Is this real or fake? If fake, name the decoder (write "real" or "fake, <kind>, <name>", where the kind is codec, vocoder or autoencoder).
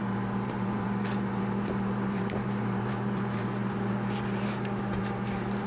fake, vocoder, BigVGAN v2